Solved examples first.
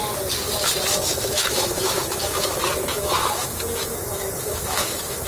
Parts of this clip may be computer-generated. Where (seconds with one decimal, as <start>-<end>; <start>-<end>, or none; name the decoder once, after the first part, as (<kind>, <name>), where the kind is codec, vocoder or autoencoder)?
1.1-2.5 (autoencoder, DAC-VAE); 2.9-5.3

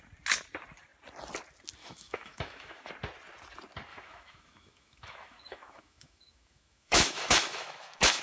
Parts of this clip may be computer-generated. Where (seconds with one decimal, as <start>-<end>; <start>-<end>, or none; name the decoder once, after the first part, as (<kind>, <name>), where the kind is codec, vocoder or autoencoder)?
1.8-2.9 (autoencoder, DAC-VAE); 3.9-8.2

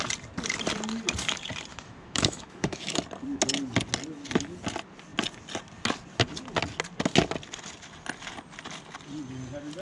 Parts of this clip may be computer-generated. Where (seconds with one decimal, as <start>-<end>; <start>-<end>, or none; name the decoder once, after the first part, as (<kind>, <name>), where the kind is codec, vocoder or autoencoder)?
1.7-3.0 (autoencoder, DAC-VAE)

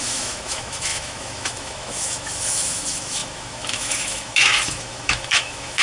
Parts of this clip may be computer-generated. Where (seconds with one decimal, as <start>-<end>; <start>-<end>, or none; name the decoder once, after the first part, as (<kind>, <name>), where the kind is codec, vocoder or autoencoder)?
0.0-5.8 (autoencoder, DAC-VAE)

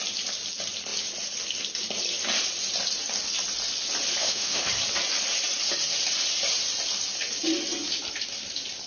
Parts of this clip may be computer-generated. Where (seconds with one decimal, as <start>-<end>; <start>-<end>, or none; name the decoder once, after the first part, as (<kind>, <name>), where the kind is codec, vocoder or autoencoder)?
4.2-4.7 (autoencoder, DAC-VAE)

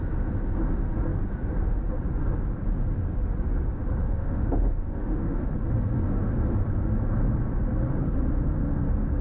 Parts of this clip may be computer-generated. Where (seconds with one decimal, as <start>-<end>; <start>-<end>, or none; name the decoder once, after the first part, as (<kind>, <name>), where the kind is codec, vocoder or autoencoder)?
4.0-5.5 (autoencoder, DAC-VAE)

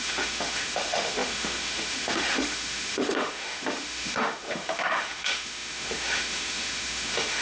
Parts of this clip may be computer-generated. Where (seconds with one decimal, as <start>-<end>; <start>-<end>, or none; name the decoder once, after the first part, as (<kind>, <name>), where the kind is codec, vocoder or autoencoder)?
0.0-7.4 (autoencoder, DAC-VAE)

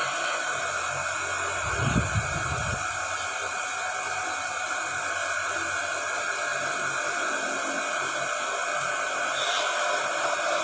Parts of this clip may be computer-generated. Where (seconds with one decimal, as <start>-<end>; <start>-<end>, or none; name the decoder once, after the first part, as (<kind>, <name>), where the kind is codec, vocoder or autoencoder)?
none